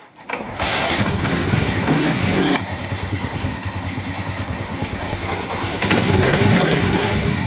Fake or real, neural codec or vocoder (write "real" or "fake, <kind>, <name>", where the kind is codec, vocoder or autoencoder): fake, codec, SNAC